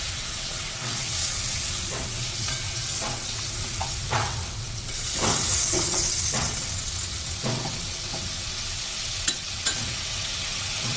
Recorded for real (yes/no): no